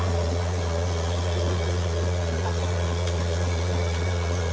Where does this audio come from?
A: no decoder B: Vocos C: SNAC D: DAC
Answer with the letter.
B